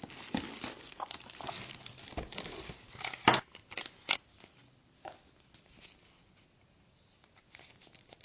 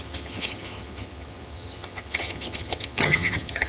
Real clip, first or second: first